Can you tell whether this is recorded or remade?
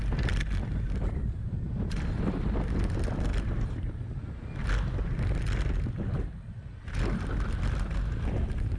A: recorded